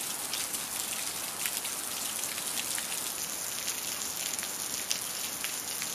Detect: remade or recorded recorded